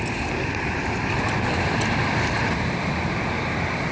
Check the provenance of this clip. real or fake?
real